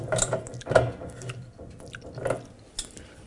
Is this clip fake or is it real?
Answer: real